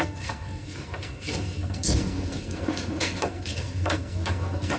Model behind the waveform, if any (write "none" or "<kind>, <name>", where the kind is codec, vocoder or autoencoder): codec, SNAC